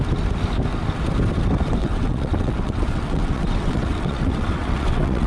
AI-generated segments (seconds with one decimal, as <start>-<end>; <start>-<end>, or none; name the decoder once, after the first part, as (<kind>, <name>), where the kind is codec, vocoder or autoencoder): 1.8-5.3 (vocoder, WaveNeXt)